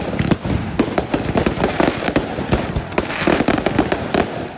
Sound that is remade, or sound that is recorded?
recorded